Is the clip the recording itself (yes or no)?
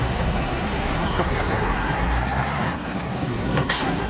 no